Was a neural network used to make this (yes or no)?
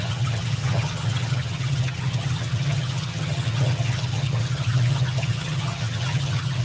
yes